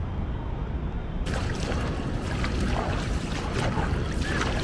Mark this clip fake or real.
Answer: real